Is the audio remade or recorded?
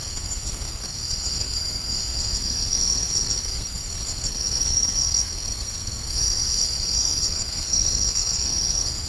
remade